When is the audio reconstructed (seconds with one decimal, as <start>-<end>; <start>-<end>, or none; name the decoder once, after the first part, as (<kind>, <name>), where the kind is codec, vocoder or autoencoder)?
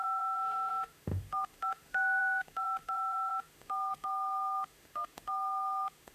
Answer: 0.0-6.1 (autoencoder, DAC-VAE)